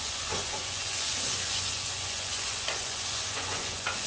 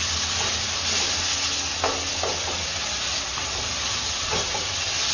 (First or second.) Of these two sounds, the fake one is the first